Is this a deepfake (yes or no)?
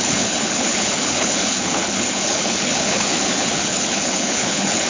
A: yes